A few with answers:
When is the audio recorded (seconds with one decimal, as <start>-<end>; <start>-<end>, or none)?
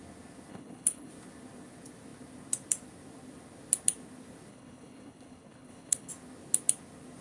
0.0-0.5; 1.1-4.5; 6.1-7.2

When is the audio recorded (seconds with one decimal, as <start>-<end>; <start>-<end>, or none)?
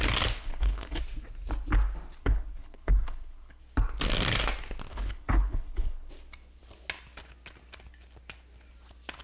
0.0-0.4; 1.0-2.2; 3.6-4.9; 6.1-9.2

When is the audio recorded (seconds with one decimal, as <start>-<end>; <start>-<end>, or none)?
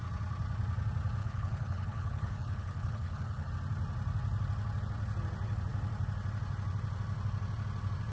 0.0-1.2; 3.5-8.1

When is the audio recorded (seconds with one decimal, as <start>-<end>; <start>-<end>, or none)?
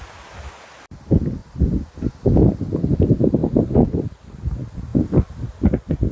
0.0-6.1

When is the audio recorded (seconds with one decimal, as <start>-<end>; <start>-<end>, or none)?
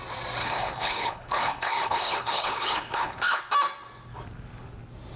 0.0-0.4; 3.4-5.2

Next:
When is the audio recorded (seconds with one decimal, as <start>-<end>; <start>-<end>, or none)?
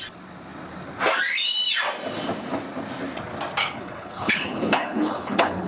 0.0-3.6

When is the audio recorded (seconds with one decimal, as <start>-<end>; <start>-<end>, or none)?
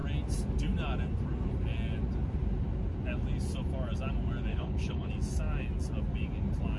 0.0-4.5; 5.1-6.8